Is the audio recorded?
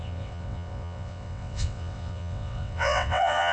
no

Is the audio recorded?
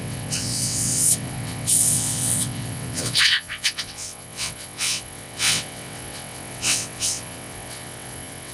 no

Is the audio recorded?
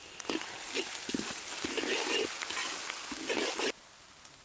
yes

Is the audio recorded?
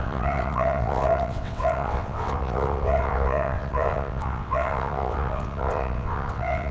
no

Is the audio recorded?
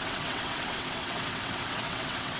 no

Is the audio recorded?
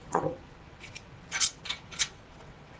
no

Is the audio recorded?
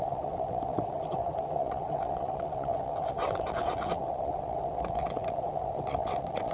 no